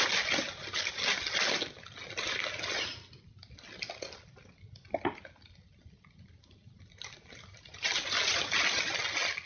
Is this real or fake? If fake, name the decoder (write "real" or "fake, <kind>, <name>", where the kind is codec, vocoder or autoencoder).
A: real